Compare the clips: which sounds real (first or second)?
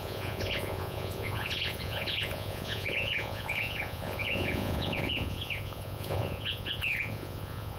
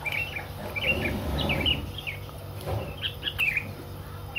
second